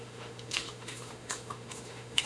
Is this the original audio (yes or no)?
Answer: no